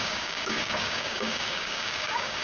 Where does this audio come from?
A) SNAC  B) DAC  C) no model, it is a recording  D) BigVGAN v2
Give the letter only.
B